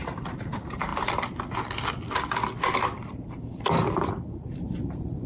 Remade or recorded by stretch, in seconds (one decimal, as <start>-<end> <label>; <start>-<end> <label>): 0.0-0.9 remade; 0.9-4.1 recorded; 4.1-5.3 remade